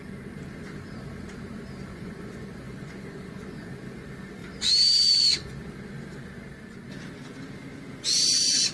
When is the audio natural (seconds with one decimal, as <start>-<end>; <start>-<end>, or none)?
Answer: 0.0-1.9; 3.7-8.7